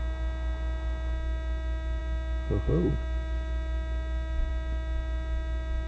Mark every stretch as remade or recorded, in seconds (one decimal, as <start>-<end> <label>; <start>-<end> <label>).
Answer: 0.0-5.9 recorded